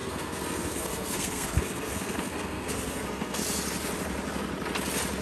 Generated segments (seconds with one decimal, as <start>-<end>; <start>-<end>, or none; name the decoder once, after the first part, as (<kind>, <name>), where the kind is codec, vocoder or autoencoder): 0.0-3.4 (codec, SNAC)